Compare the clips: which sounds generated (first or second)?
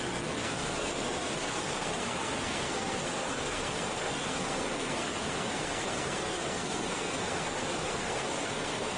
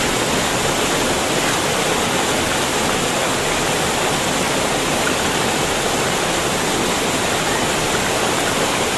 first